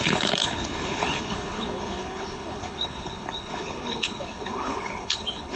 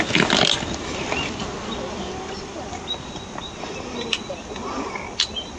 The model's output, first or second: first